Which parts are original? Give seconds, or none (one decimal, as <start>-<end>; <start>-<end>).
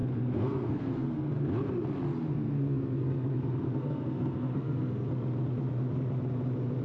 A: 1.3-2.3; 5.1-6.8